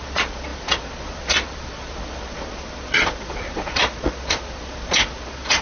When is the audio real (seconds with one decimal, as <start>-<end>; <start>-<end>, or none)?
none